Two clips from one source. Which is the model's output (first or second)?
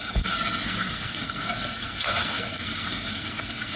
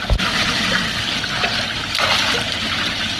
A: first